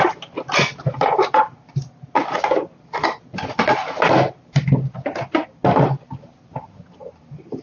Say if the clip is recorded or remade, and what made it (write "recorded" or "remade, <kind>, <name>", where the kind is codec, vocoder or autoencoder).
recorded